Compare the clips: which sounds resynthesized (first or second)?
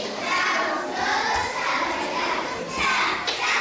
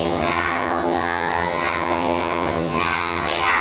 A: second